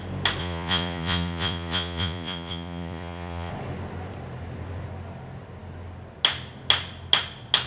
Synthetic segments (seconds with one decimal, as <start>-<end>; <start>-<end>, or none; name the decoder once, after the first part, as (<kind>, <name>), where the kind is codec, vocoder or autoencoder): 0.4-3.5 (vocoder, Vocos)